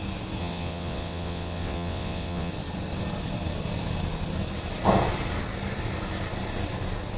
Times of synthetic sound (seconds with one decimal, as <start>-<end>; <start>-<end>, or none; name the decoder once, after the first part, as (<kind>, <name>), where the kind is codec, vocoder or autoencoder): 0.4-2.5 (vocoder, WaveNeXt)